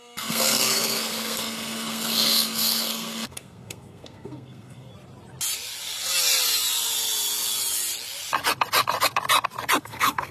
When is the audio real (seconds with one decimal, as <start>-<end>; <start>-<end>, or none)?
4.9-9.8